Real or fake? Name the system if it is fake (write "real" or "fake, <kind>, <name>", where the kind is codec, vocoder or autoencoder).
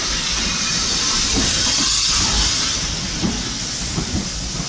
real